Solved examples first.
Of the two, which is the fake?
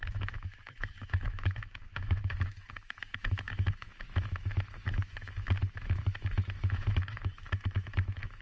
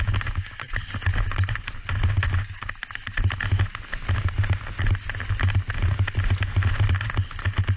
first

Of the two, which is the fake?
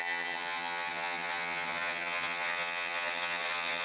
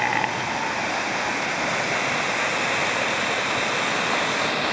first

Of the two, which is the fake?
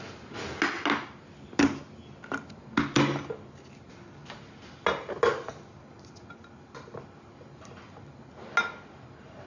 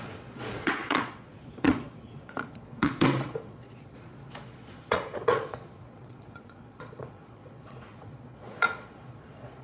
second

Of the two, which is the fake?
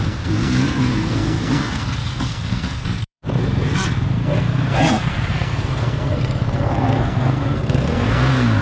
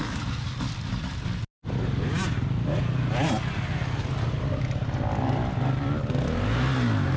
first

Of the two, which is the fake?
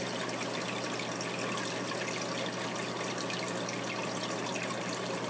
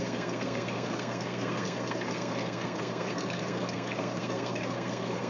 second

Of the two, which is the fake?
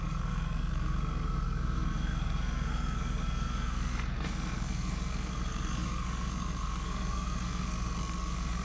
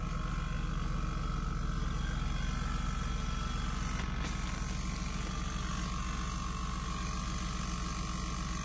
first